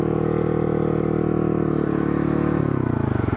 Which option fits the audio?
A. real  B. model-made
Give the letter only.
A